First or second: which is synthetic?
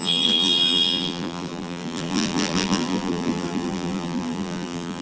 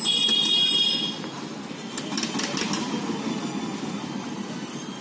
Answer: first